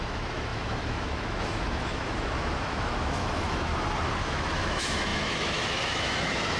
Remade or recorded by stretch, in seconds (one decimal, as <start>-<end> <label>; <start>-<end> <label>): 0.0-3.7 remade; 3.7-4.2 recorded; 4.2-6.6 remade

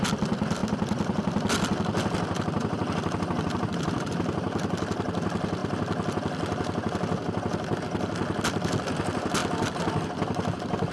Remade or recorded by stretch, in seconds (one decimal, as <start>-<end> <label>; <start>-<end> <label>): 0.0-10.9 recorded